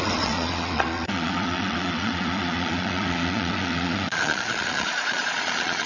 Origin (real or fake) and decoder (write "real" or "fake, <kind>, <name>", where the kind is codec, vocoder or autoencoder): fake, vocoder, Vocos